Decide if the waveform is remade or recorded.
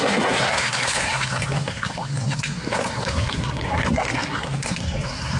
remade